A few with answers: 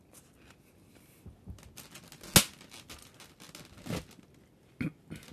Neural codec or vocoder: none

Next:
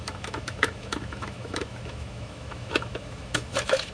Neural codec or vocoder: autoencoder, DAC-VAE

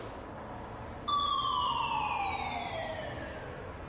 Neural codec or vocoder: none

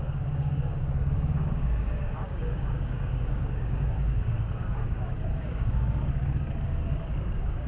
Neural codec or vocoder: codec, DAC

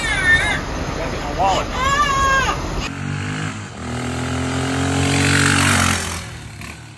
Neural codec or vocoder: none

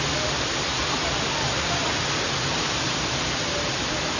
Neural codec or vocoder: none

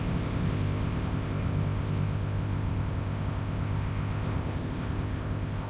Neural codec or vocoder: codec, ZipCodec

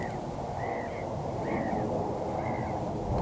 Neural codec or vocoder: none